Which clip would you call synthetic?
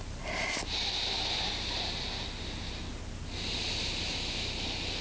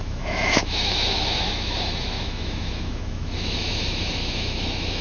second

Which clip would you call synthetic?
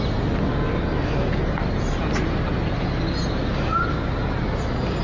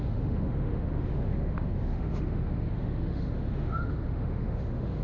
second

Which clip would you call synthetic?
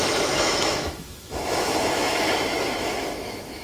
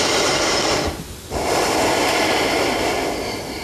first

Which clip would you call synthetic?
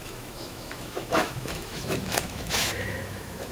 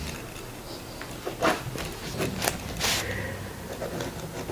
first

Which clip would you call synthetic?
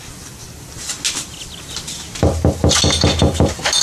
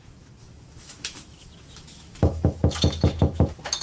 second